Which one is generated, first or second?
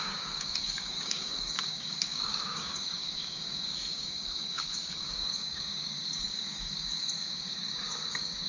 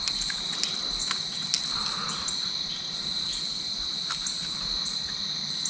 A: first